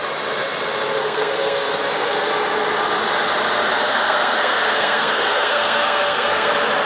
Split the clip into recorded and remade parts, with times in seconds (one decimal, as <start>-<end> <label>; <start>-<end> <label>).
0.0-1.0 recorded; 1.0-1.8 remade; 1.8-3.8 recorded; 3.8-6.5 remade; 6.5-6.9 recorded